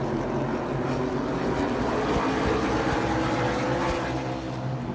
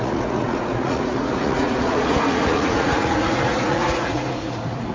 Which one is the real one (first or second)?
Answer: first